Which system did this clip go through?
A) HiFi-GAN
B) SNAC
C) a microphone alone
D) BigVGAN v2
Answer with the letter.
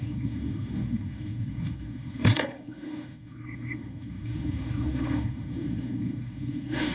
B